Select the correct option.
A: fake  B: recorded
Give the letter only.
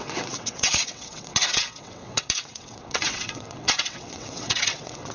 A